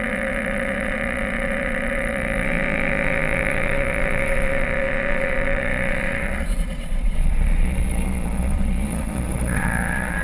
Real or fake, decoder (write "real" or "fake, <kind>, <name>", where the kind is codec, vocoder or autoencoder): fake, vocoder, Vocos